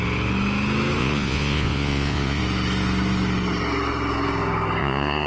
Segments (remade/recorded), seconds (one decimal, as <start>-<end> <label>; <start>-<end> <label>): 0.0-1.0 recorded; 1.0-2.4 remade; 2.4-4.8 recorded; 4.8-5.3 remade